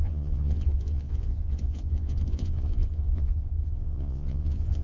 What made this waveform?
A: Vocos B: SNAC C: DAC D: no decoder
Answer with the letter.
A